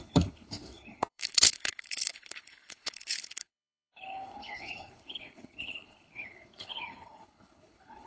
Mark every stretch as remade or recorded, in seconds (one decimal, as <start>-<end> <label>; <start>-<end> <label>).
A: 0.0-8.1 remade